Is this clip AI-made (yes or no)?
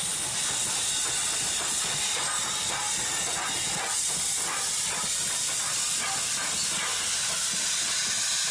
no